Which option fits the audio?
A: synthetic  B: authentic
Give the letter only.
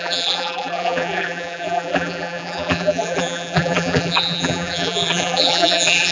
A